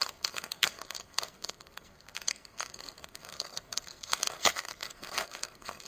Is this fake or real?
fake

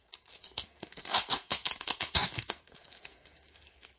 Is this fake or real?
fake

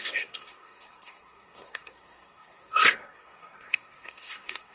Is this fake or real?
fake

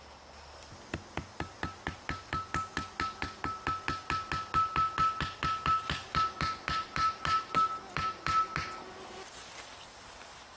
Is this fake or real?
real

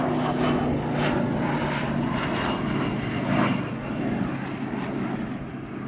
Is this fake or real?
real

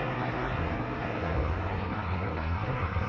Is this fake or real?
fake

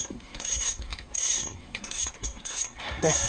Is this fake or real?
fake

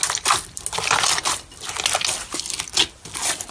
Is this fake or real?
real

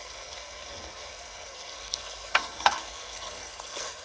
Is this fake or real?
fake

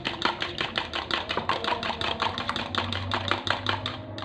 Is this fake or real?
real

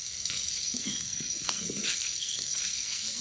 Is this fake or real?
fake